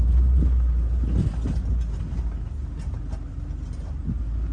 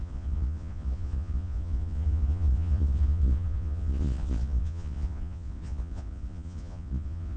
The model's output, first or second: second